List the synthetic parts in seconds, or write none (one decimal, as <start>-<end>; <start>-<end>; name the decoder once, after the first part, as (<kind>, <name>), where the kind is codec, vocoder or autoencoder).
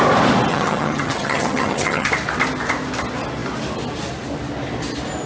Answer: 0.5-2.1 (vocoder, HiFi-GAN)